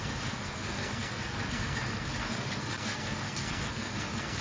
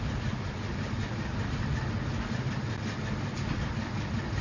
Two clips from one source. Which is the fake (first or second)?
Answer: first